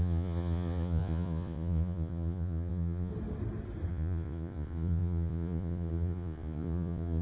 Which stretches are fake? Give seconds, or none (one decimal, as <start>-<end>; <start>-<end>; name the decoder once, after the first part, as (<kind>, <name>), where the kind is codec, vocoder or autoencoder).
0.0-3.1 (vocoder, Vocos); 3.9-7.2